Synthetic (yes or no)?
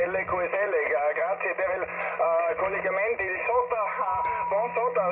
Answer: no